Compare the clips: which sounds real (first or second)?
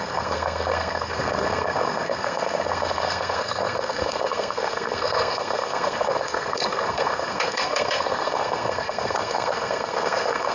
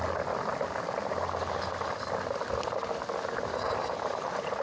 second